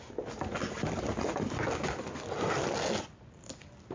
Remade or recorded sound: recorded